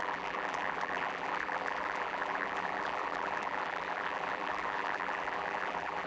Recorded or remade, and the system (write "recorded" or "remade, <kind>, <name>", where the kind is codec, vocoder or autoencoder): remade, vocoder, BigVGAN v2